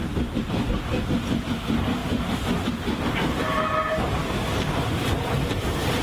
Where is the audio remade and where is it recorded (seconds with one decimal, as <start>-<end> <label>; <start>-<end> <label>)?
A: 0.0-6.0 recorded